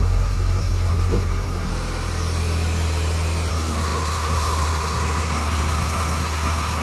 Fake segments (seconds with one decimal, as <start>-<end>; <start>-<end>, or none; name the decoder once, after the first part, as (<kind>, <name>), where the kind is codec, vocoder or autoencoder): 0.0-1.7 (codec, SNAC); 3.5-6.8